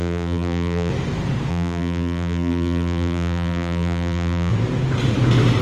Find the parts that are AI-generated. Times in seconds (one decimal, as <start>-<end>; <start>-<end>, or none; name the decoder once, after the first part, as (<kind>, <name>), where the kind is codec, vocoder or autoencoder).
0.0-0.9 (vocoder, BigVGAN v2); 1.5-4.5